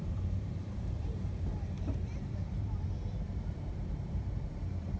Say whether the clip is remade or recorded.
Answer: remade